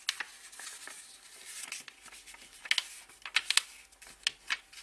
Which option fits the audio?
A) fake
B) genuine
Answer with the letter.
B